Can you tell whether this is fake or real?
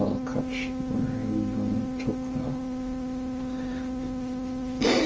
real